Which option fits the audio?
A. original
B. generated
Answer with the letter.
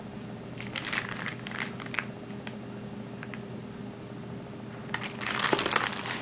A